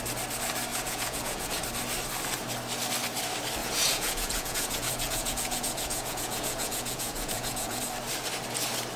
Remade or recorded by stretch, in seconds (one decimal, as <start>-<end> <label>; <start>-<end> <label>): 0.0-0.7 recorded; 0.7-1.6 remade; 1.6-3.6 recorded; 3.6-7.8 remade; 7.8-9.0 recorded